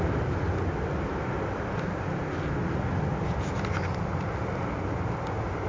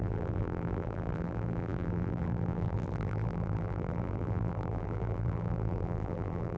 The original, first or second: first